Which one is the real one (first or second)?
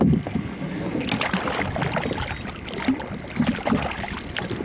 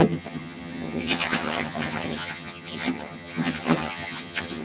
first